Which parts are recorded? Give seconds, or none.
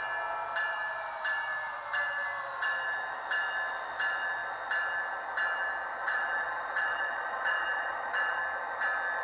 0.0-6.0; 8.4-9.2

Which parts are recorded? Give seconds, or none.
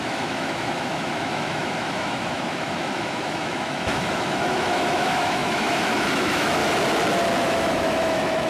6.6-7.4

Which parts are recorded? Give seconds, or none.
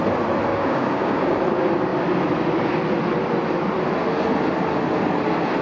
0.0-0.5; 1.4-5.6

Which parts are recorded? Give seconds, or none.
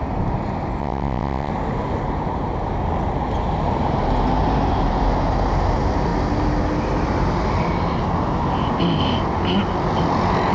0.0-0.8; 1.5-10.5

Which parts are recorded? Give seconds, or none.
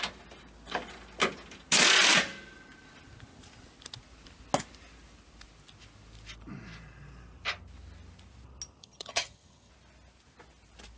0.0-8.8; 9.7-11.0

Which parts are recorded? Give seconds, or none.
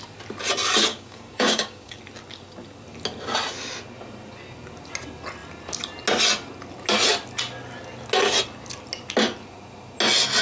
0.0-0.9; 2.0-10.4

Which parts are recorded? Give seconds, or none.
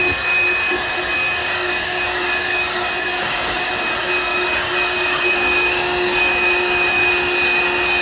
0.0-1.4; 3.7-4.3; 7.1-8.0